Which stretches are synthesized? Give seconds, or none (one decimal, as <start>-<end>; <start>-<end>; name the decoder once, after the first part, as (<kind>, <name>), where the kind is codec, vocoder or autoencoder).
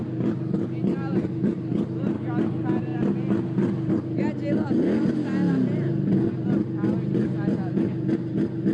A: none